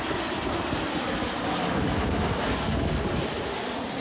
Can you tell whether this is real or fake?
real